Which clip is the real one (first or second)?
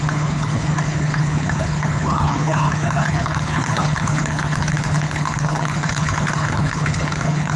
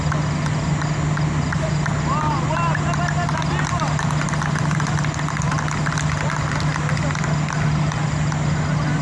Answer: second